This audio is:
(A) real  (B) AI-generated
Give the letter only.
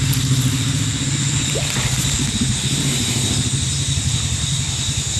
A